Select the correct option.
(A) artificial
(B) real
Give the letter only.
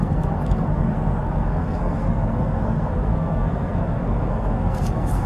A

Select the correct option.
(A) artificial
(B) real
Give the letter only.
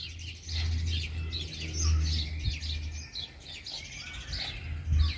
B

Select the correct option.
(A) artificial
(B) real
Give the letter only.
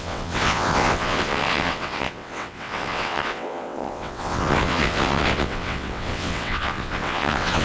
A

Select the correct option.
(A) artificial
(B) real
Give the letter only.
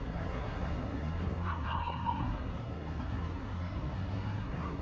A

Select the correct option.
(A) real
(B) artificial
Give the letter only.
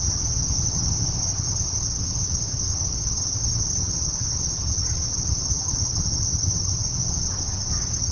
B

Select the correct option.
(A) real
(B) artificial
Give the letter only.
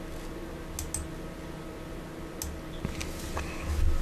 A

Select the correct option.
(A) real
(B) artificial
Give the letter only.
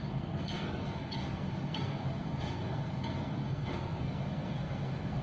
B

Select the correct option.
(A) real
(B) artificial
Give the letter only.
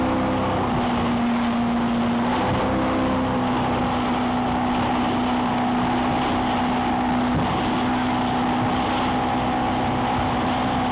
A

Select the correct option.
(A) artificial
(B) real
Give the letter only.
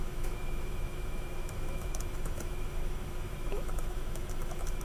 A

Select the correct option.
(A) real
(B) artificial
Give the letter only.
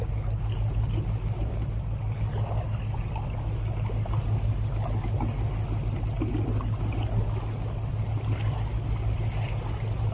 A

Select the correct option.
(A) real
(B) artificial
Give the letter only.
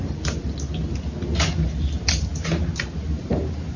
A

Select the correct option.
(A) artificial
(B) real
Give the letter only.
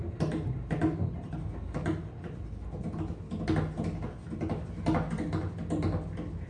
B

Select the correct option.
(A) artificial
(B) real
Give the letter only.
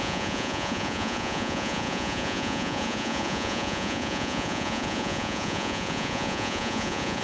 A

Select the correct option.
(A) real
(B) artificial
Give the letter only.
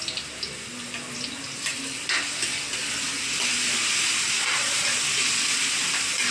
A